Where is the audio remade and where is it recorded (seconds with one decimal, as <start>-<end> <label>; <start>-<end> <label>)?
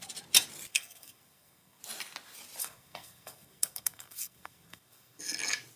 0.0-0.7 recorded; 0.7-1.8 remade; 1.8-2.6 recorded; 2.6-5.2 remade; 5.2-5.8 recorded